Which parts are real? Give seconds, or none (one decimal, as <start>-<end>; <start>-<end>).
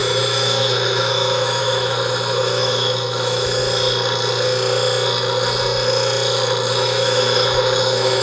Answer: 3.6-6.7